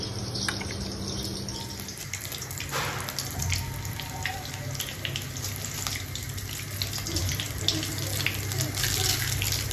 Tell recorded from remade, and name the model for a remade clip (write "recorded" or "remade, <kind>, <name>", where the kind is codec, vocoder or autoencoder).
recorded